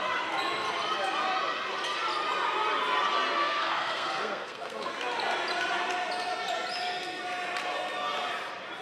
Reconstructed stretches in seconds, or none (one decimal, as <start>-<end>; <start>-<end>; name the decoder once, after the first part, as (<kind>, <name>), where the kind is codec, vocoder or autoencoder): 3.4-4.9 (codec, SNAC)